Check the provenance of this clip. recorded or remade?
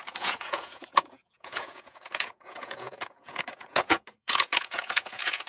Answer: remade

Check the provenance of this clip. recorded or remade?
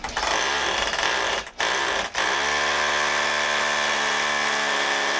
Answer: recorded